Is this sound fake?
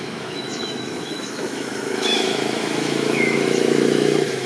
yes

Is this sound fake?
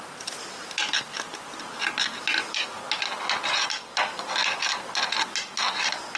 no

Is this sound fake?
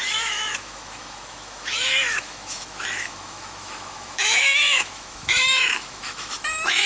yes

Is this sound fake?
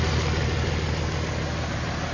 no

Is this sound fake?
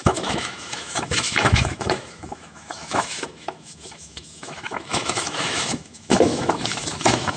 yes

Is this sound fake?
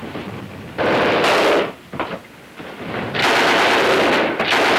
no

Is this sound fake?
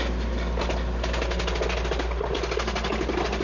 no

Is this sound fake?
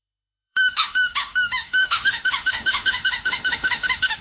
yes